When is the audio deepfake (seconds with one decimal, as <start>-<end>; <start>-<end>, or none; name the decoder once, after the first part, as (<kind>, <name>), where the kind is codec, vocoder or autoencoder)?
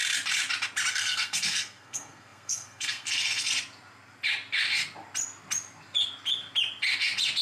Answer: 0.9-3.5 (codec, SNAC)